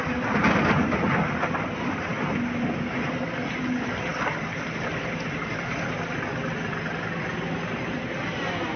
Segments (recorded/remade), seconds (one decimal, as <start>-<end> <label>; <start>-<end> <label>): 0.0-8.8 recorded